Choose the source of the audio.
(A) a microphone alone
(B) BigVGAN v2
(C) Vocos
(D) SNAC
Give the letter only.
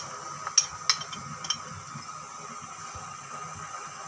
A